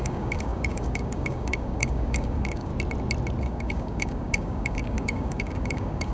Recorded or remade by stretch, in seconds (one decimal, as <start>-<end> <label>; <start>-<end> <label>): 0.0-2.7 remade; 2.7-3.4 recorded; 3.4-6.1 remade